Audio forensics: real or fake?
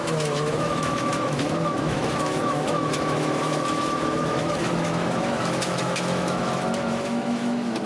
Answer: fake